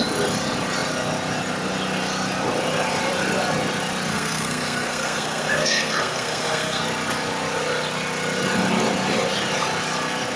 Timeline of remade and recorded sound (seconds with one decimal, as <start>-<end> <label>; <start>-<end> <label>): 0.0-4.1 recorded; 4.1-6.8 remade; 6.8-10.4 recorded